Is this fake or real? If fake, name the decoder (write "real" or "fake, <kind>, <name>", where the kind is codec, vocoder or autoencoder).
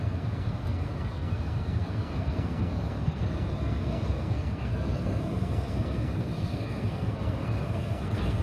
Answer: fake, codec, SNAC